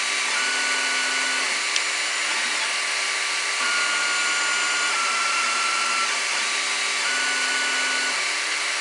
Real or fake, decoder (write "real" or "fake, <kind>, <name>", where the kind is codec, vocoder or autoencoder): real